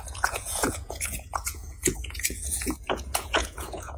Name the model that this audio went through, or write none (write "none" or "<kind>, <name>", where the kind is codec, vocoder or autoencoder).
vocoder, Vocos